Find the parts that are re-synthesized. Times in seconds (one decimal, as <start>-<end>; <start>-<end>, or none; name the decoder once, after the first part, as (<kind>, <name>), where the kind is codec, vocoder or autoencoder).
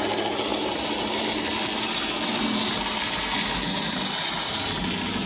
none